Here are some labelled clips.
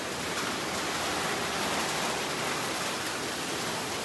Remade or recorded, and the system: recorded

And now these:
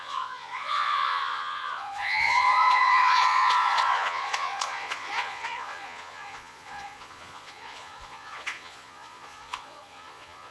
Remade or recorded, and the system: remade, vocoder, Vocos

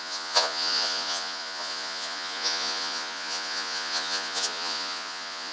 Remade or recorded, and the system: remade, vocoder, Vocos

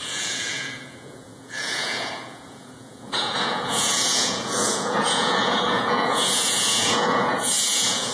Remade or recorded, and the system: remade, vocoder, Vocos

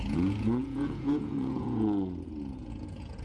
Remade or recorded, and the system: remade, vocoder, Vocos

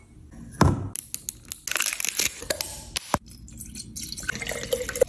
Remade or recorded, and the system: recorded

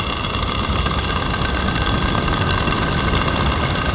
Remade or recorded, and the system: recorded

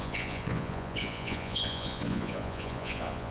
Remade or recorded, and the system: remade, vocoder, Vocos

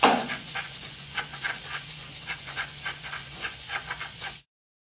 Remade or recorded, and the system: remade, vocoder, Vocos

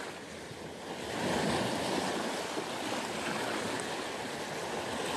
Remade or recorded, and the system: recorded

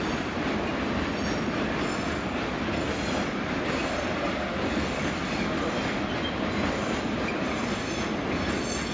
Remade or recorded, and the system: recorded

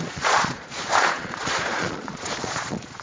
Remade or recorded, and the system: remade, vocoder, Vocos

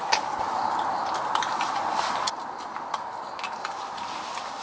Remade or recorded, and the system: recorded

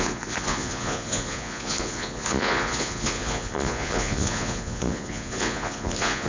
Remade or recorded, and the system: remade, vocoder, Vocos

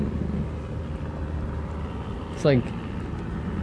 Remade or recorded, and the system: recorded